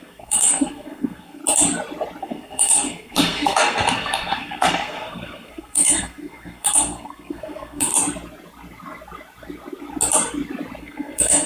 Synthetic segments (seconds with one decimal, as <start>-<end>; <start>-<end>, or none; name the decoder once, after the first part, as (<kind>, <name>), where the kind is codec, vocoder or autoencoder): 0.0-1.4 (codec, SNAC); 2.2-7.9; 10.8-11.5